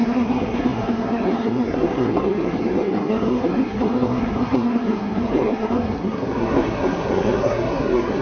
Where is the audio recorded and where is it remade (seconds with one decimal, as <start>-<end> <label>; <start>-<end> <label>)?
0.0-8.2 remade